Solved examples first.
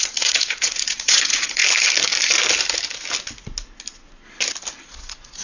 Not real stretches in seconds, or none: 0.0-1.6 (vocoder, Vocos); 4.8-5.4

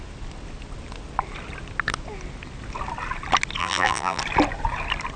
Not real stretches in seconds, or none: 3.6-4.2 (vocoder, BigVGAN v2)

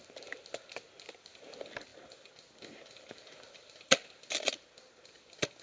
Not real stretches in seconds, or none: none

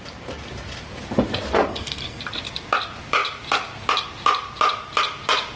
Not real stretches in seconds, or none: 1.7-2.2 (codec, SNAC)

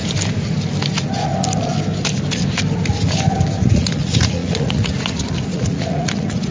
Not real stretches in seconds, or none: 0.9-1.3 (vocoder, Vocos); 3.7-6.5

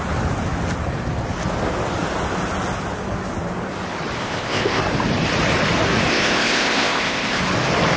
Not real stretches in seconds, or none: 4.2-4.8 (codec, ZipCodec); 6.1-7.4